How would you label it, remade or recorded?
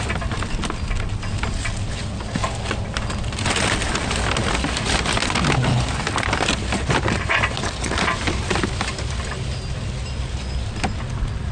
recorded